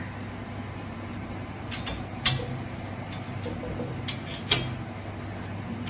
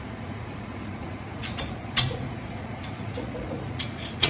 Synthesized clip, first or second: second